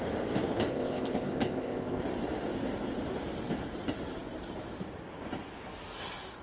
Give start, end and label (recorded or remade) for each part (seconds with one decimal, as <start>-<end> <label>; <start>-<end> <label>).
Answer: 0.0-0.7 recorded; 0.7-2.0 remade; 2.0-6.4 recorded